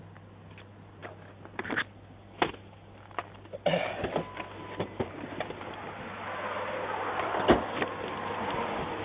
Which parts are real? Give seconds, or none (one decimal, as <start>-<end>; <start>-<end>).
0.0-9.0

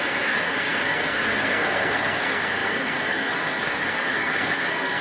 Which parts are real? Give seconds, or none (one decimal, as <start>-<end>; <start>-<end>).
none

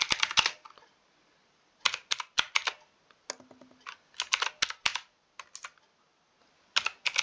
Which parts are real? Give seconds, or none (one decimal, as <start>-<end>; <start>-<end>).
0.0-7.2